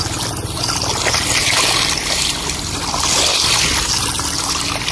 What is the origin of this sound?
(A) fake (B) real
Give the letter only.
B